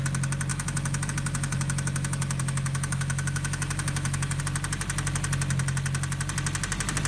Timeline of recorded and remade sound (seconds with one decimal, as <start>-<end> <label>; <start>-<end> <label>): 0.0-0.5 recorded; 0.5-4.4 remade; 4.4-7.1 recorded